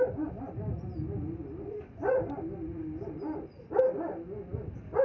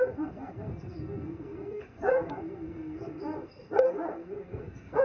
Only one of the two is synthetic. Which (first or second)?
second